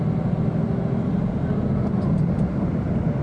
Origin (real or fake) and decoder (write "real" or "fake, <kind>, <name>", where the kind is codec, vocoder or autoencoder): real